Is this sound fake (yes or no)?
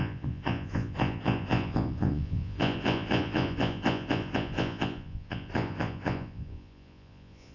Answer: yes